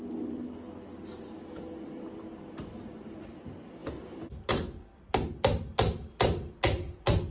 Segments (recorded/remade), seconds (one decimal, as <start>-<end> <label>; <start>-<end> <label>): 0.0-7.3 recorded